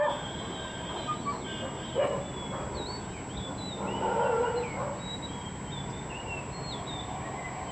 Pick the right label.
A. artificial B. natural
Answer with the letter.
B